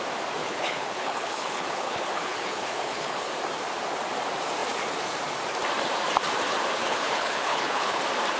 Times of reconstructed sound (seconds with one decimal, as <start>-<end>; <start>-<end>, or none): 0.4-3.3; 6.8-8.0